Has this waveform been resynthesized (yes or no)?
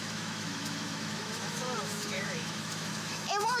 yes